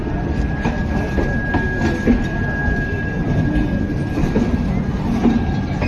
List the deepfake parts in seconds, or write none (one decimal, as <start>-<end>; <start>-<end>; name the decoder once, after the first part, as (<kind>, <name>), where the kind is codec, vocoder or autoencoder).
none